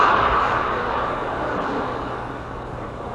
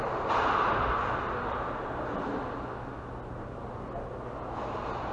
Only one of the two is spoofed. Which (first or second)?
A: first